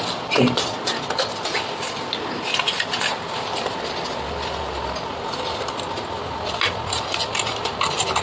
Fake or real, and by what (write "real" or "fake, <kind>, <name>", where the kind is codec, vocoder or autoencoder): real